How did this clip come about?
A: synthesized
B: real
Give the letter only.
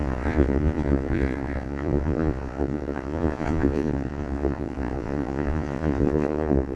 A